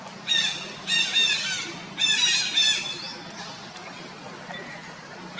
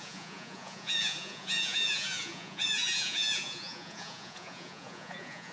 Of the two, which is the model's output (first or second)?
second